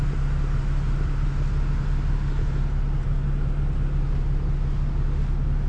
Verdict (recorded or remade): recorded